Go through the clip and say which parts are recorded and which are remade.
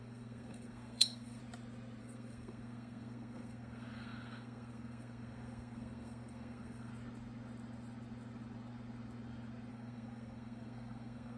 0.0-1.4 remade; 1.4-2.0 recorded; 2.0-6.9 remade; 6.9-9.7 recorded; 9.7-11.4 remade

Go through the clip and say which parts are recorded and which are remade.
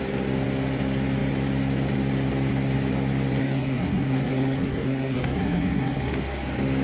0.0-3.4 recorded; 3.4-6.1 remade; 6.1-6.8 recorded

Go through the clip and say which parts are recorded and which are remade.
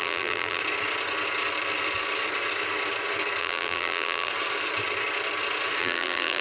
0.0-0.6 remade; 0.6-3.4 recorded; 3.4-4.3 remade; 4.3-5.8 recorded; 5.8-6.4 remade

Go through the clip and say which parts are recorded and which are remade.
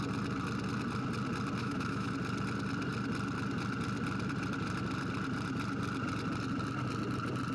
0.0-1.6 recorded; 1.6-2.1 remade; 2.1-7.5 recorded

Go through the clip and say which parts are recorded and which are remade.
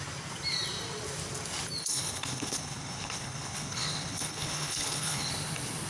0.0-1.8 recorded; 1.8-5.3 remade; 5.3-5.9 recorded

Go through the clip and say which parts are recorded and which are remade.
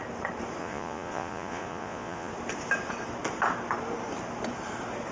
0.0-0.6 recorded; 0.6-2.3 remade; 2.3-5.1 recorded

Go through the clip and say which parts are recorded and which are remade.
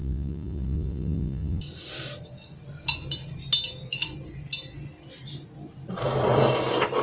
0.0-1.6 remade; 1.6-7.0 recorded